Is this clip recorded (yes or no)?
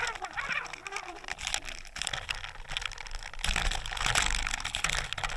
yes